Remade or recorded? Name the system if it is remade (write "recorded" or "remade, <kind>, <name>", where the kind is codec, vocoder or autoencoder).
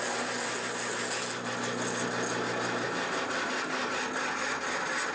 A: recorded